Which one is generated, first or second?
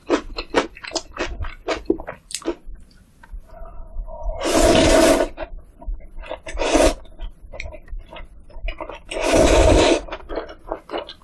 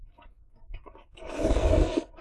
second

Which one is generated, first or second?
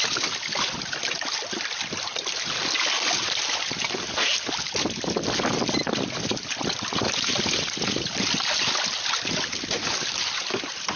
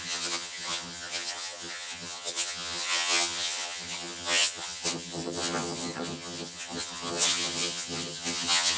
second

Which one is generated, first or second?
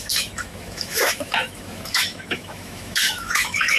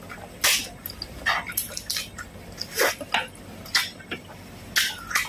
first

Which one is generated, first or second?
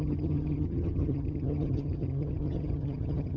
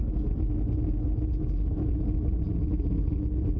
first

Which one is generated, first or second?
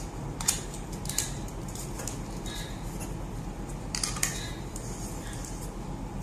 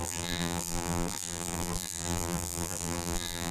second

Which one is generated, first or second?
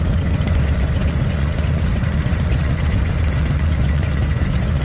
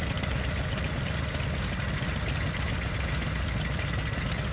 first